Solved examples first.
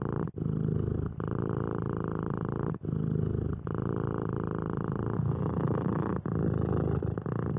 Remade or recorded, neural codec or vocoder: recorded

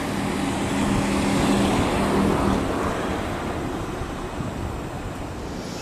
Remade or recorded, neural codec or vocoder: recorded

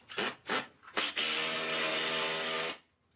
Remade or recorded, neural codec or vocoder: recorded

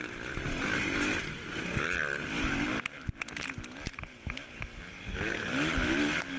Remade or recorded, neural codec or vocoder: recorded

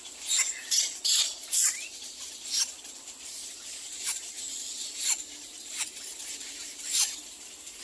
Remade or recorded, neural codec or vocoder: remade, vocoder, BigVGAN v2